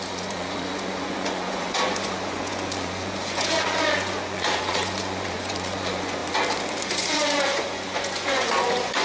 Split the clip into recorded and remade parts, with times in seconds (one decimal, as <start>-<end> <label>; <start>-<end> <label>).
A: 0.0-6.2 remade; 6.2-6.8 recorded; 6.8-9.0 remade